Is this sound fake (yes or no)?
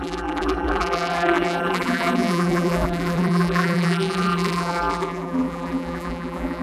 yes